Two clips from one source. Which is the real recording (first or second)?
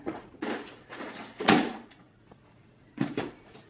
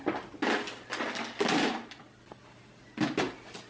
second